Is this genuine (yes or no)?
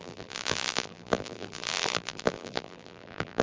no